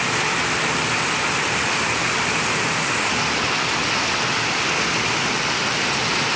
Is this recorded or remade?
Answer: recorded